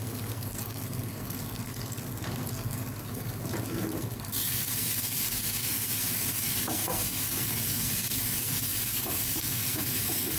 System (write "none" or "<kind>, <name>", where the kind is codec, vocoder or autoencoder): codec, SNAC